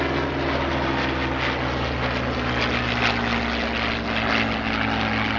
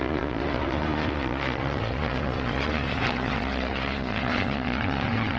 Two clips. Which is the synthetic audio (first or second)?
second